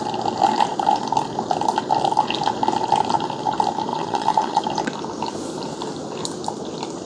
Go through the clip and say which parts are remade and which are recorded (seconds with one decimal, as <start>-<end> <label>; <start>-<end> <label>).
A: 0.0-3.9 recorded; 3.9-4.6 remade; 4.6-7.1 recorded